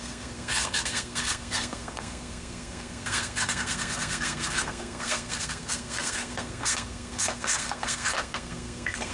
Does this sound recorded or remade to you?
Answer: remade